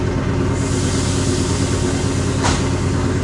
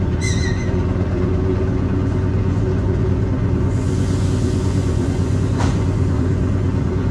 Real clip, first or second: first